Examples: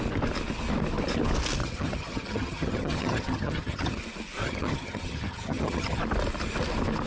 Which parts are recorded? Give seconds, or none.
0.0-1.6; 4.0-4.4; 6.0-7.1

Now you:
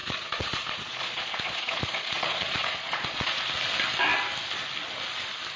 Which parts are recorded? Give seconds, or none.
3.4-5.6

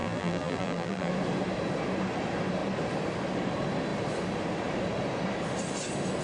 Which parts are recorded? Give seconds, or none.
1.1-6.2

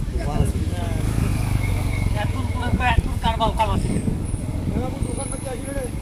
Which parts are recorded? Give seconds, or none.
none